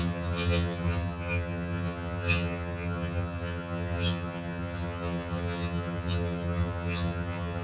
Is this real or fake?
fake